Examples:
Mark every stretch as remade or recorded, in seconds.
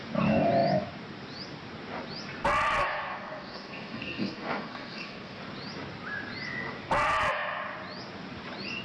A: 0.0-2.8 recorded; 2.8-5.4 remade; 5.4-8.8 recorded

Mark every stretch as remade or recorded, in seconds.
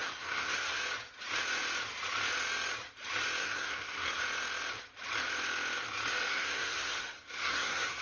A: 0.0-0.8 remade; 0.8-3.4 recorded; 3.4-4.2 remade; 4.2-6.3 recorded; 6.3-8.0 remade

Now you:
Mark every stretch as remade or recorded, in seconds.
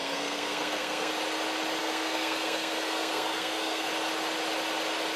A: 0.0-1.1 remade; 1.1-1.8 recorded; 1.8-3.9 remade; 3.9-5.2 recorded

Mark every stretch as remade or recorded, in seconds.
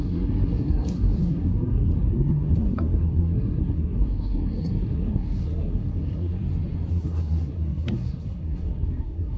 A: 0.0-6.4 remade; 6.4-6.9 recorded; 6.9-9.4 remade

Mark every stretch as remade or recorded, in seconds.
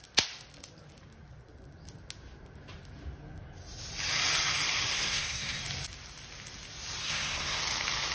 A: 0.0-4.9 recorded; 4.9-5.6 remade; 5.6-7.0 recorded; 7.0-7.6 remade; 7.6-8.1 recorded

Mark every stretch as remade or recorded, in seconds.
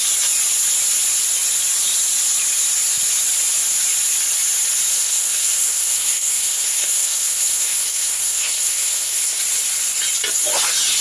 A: 0.0-4.9 recorded; 4.9-9.4 remade; 9.4-11.0 recorded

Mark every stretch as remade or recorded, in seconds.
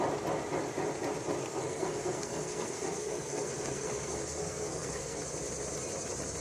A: 0.0-1.4 recorded; 1.4-5.2 remade; 5.2-6.4 recorded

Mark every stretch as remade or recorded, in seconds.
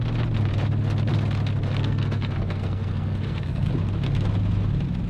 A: 0.0-1.8 recorded; 1.8-3.7 remade; 3.7-5.1 recorded